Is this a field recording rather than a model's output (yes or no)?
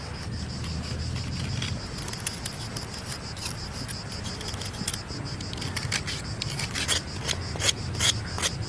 yes